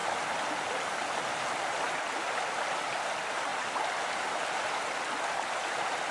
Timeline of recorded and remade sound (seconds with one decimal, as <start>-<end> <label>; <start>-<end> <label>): 0.0-6.1 recorded